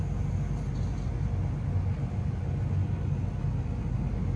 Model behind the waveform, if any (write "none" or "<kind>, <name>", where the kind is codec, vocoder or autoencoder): none